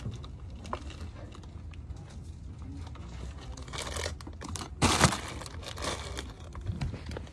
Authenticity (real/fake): real